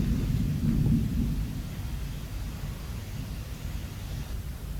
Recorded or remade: recorded